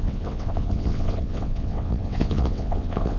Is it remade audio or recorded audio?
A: remade